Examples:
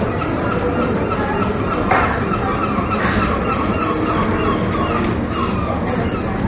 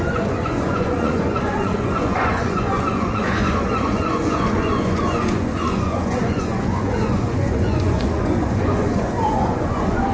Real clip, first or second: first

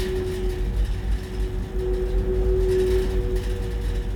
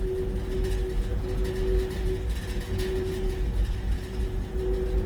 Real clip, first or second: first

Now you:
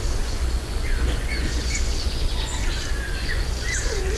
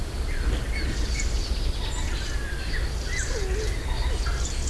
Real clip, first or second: second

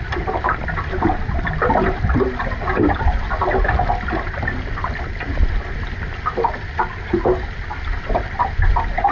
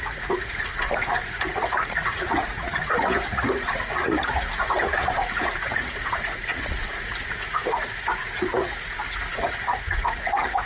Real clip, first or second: first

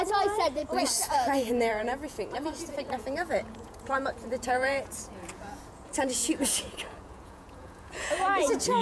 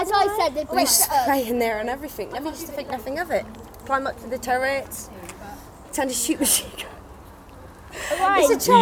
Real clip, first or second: second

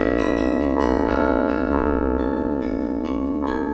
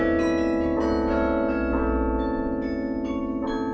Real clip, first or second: second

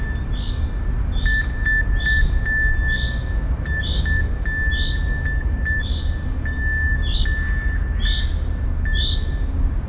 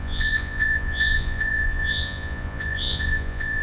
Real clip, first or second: first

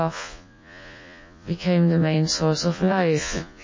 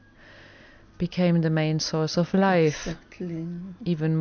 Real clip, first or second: second